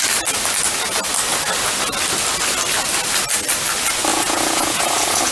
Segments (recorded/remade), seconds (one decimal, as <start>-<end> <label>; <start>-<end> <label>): 0.0-4.1 recorded; 4.1-5.3 remade